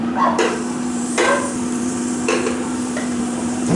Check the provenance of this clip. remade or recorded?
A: remade